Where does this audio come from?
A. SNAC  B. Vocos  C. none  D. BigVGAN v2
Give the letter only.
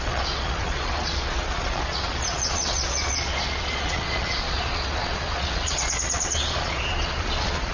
B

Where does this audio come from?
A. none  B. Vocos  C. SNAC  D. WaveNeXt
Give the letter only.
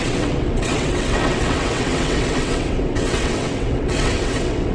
D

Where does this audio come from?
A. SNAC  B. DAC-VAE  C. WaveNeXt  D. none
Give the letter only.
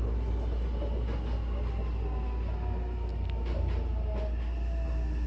D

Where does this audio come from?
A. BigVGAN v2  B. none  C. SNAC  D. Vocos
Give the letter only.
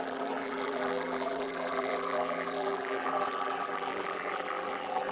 A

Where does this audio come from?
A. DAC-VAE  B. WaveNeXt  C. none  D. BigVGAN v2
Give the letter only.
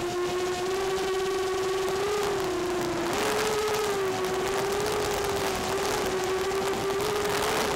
C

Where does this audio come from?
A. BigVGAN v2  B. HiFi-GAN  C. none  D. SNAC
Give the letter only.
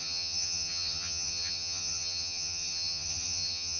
B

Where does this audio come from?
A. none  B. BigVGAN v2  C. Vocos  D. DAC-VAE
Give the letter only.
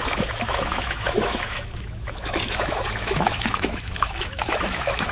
D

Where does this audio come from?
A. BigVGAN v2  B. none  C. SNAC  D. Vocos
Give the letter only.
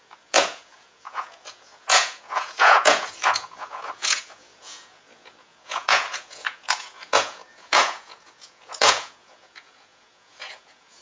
D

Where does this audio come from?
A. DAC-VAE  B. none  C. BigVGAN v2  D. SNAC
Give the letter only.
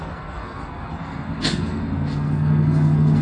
D